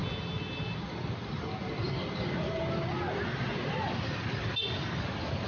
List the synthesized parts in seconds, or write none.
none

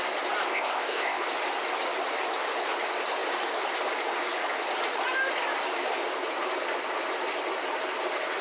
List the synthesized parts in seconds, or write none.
0.5-1.2 (codec, ZipCodec)

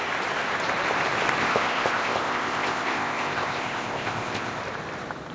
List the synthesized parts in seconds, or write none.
1.4-4.6 (codec, ZipCodec)

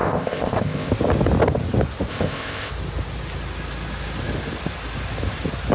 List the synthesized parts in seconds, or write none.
0.0-0.9 (codec, ZipCodec); 2.1-2.7

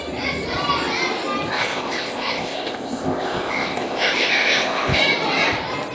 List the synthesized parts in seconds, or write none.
1.5-5.0 (codec, ZipCodec)